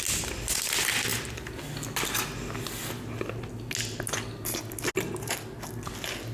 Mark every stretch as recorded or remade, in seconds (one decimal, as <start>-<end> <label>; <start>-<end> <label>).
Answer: 0.0-6.3 recorded